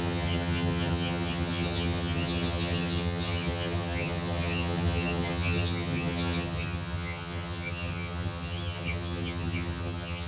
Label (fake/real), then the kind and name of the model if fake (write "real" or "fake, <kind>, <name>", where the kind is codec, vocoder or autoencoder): fake, vocoder, HiFi-GAN